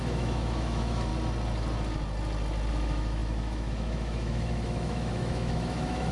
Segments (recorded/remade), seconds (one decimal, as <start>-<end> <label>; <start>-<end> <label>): 0.0-1.1 remade; 1.1-2.7 recorded; 2.7-6.1 remade